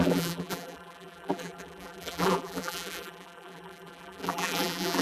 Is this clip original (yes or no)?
no